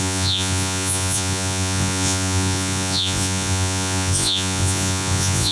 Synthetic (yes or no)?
yes